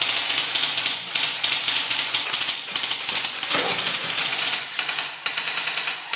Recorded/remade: remade